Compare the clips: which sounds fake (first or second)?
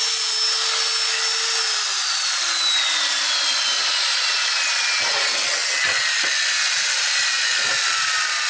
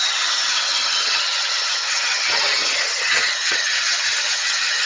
second